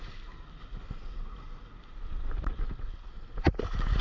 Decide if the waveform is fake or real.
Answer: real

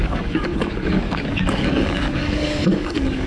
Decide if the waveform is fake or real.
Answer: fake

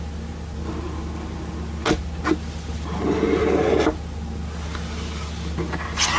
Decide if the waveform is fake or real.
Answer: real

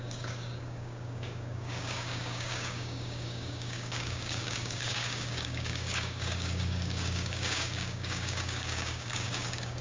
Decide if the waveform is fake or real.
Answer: fake